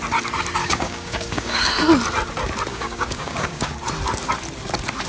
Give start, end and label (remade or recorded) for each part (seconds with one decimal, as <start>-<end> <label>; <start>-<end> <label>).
0.0-0.6 recorded; 0.6-1.7 remade; 1.7-2.7 recorded; 2.7-3.7 remade; 3.7-5.1 recorded